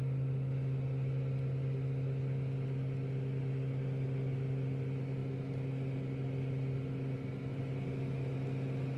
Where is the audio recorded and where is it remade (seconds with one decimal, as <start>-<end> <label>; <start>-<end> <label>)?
0.0-9.0 recorded